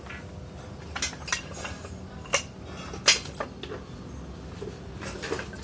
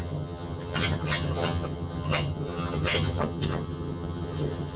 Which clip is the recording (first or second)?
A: first